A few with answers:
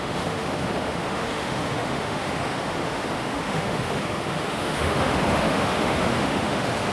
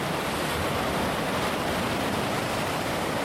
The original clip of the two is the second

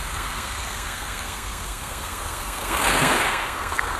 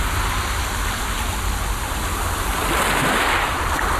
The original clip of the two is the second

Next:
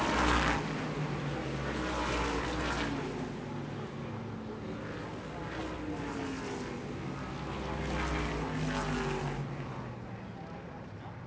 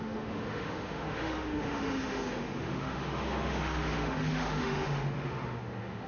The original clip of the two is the first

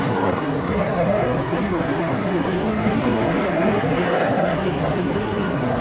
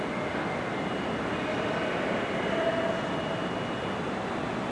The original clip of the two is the second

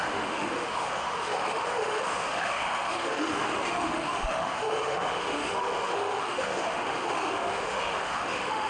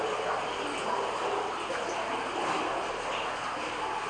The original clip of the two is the second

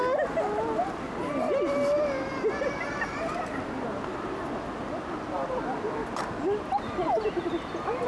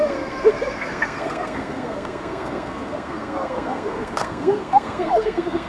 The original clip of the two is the first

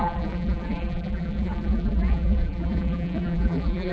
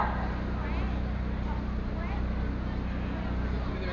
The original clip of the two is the second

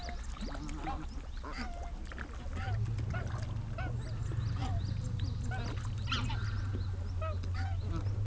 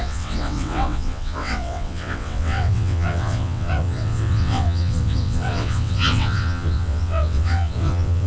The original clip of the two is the first